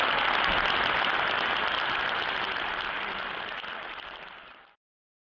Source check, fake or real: real